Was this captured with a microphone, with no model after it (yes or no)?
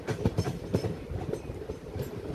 no